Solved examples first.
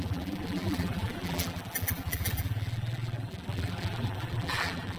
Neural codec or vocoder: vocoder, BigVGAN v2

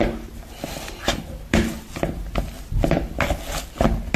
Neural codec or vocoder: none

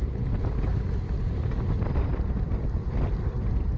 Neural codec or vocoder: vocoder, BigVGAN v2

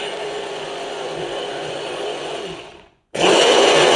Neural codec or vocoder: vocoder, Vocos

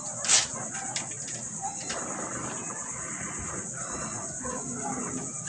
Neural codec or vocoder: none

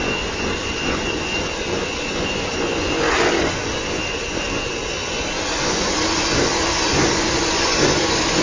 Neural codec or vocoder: vocoder, Vocos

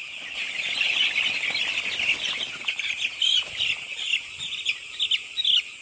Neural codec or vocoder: none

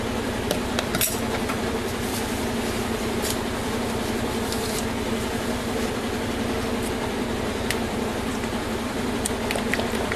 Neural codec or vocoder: vocoder, BigVGAN v2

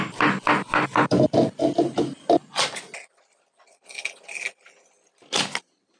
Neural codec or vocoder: none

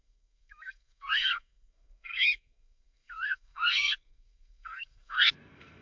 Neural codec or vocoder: codec, SNAC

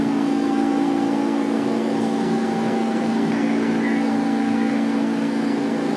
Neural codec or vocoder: codec, SNAC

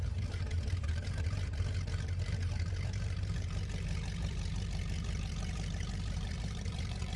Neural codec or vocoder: vocoder, BigVGAN v2